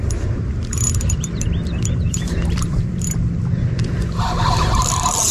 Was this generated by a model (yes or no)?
yes